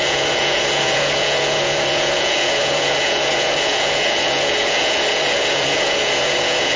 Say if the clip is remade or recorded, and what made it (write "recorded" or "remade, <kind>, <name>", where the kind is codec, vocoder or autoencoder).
remade, vocoder, Vocos